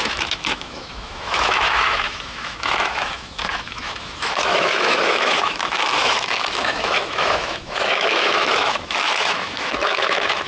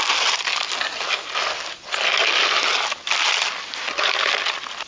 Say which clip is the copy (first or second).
first